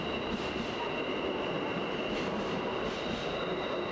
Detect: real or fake real